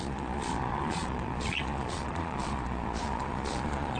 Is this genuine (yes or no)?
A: no